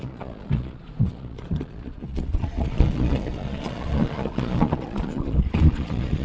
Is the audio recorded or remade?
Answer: remade